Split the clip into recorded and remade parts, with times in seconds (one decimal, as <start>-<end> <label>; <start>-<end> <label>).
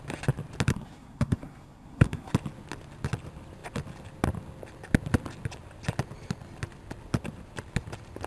0.0-0.7 recorded; 0.7-2.3 remade; 2.3-8.3 recorded